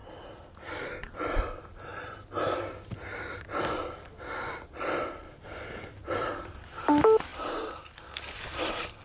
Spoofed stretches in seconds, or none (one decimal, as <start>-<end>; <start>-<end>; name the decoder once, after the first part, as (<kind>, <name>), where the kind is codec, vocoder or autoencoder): 0.0-1.4 (vocoder, BigVGAN v2); 7.3-8.0